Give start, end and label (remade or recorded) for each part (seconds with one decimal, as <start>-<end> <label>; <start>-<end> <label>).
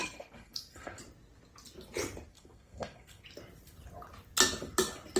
0.0-1.0 remade; 1.0-2.3 recorded; 2.3-3.2 remade; 3.2-5.2 recorded